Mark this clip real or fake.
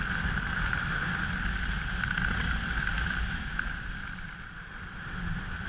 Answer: real